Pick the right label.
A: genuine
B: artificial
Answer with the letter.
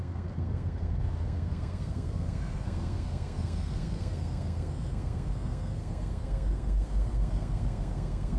B